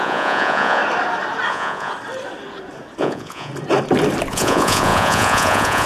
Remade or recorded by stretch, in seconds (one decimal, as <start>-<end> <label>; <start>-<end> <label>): 0.0-0.8 remade; 0.8-1.5 recorded; 1.5-1.9 remade; 1.9-3.0 recorded; 3.0-3.5 remade; 3.5-4.3 recorded; 4.3-5.9 remade